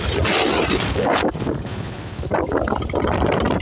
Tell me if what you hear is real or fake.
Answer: real